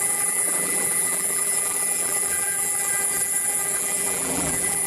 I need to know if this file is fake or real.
fake